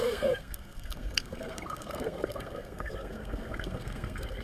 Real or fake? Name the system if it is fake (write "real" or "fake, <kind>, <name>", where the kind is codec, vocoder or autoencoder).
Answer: fake, codec, SNAC